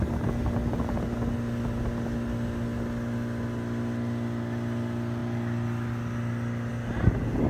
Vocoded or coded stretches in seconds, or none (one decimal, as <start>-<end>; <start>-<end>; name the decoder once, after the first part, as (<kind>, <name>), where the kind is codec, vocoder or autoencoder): none